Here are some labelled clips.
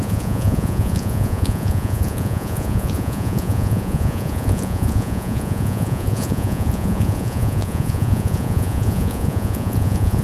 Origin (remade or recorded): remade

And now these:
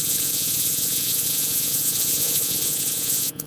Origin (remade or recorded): remade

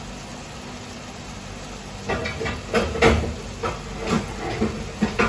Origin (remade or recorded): recorded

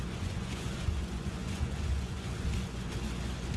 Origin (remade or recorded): remade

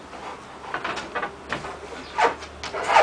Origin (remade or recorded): recorded